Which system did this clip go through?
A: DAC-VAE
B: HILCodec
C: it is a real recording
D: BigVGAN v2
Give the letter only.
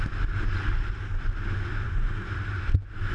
C